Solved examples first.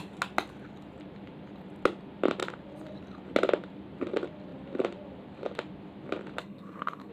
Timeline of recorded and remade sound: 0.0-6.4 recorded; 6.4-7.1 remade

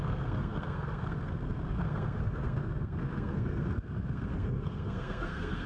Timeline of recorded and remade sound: 0.0-5.7 remade

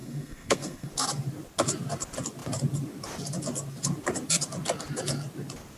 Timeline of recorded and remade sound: 0.0-0.9 remade; 0.9-5.8 recorded